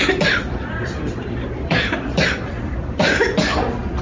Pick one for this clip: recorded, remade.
remade